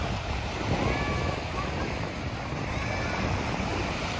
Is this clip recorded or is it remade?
recorded